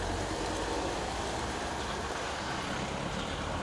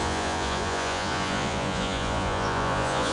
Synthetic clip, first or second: second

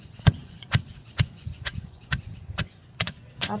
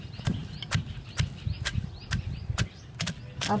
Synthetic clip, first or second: first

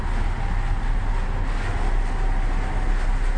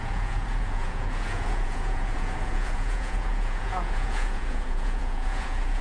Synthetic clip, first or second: second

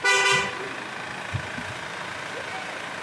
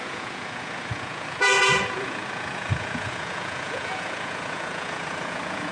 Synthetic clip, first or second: second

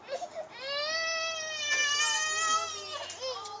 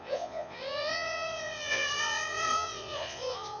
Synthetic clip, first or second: second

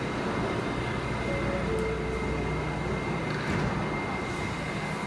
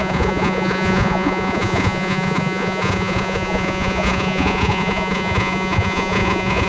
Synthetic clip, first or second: second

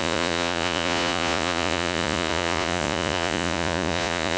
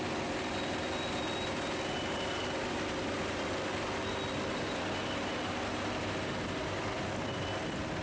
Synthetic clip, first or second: first